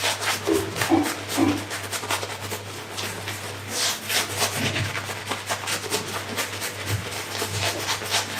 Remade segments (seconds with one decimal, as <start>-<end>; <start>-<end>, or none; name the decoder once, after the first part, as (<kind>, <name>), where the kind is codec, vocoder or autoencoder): none